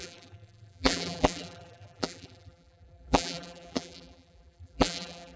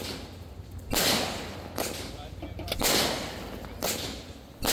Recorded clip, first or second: second